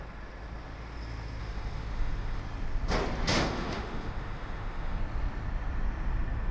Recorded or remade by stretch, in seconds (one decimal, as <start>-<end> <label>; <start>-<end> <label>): 0.0-1.4 recorded; 1.4-2.4 remade; 2.4-3.3 recorded; 3.3-5.0 remade; 5.0-6.5 recorded